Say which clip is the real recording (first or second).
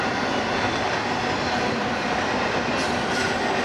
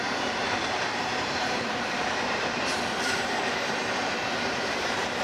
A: first